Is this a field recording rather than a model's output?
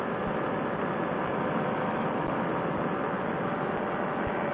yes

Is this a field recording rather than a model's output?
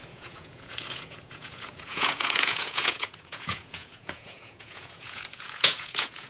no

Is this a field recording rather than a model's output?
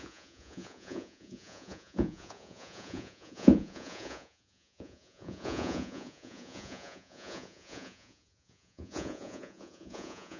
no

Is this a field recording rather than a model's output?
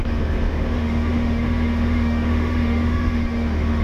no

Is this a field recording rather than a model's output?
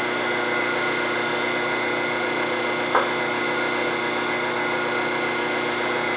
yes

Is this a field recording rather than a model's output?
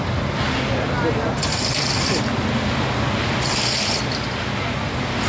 yes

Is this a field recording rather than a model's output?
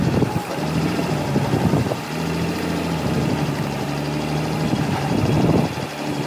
no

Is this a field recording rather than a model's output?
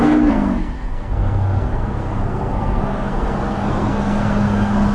no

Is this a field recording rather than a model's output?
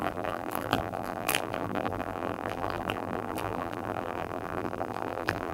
no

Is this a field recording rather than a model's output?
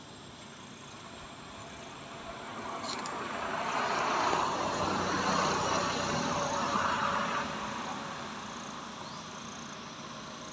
yes